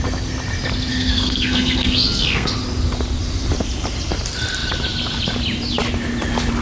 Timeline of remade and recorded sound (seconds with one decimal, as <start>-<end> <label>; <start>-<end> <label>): 0.0-0.9 recorded; 0.9-2.5 remade; 2.5-6.6 recorded

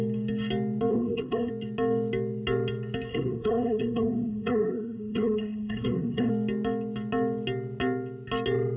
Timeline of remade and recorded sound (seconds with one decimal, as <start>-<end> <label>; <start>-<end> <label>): 0.0-0.9 recorded; 0.9-1.5 remade; 1.5-3.1 recorded; 3.1-6.3 remade; 6.3-8.8 recorded